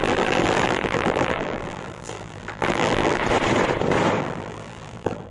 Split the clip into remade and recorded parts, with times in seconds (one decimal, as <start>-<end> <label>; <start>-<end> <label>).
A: 0.0-3.2 remade; 3.2-4.2 recorded; 4.2-5.3 remade